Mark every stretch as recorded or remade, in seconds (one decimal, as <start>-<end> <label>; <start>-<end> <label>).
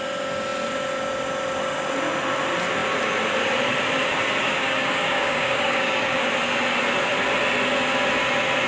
0.0-4.4 recorded; 4.4-6.3 remade; 6.3-8.7 recorded